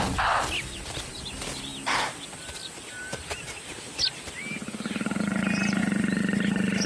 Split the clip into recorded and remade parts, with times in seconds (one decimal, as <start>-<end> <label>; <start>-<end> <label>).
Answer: 0.0-6.9 recorded